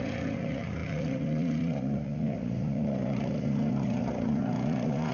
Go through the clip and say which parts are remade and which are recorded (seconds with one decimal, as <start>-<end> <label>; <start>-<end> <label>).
0.0-5.1 remade